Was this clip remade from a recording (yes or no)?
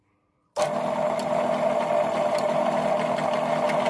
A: no